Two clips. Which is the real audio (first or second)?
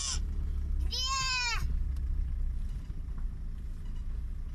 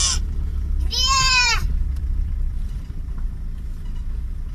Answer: first